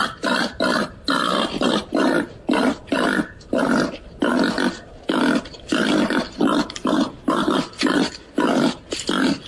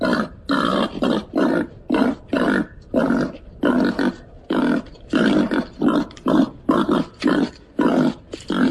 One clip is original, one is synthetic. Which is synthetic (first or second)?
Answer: first